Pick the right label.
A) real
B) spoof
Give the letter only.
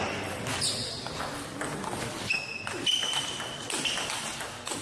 A